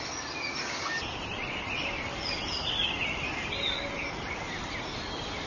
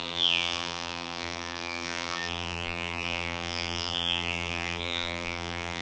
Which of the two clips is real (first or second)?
first